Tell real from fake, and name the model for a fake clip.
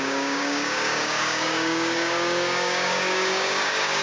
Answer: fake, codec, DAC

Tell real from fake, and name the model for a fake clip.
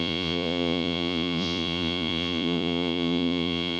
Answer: fake, vocoder, Vocos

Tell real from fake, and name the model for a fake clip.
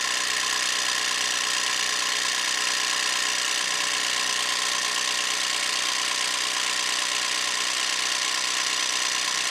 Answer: real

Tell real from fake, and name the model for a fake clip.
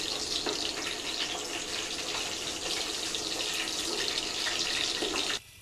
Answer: real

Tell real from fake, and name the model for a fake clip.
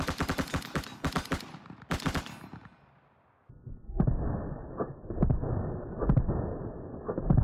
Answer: real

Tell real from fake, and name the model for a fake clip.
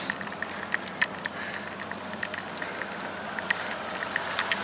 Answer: real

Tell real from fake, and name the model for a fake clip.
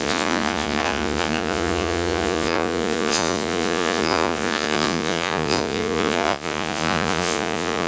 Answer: fake, vocoder, Vocos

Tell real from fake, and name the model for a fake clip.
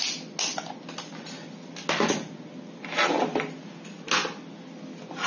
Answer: real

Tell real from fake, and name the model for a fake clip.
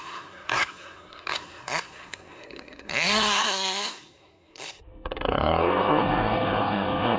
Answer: fake, codec, SNAC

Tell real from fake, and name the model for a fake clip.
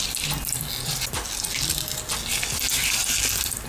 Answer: real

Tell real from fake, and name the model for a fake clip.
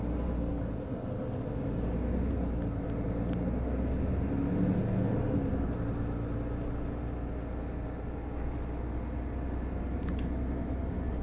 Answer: real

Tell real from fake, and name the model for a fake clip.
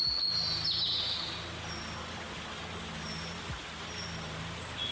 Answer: real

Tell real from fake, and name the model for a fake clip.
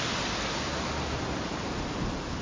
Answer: real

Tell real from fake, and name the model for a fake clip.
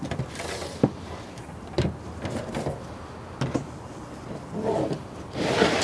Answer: real